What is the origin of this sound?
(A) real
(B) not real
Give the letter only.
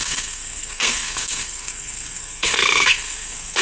B